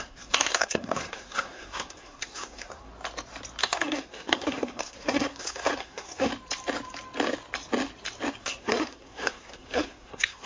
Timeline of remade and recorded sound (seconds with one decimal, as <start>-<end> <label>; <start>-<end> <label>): 0.0-2.9 remade; 2.9-3.6 recorded; 3.6-6.3 remade; 6.3-8.4 recorded; 8.4-10.5 remade